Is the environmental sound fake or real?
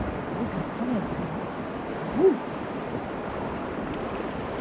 real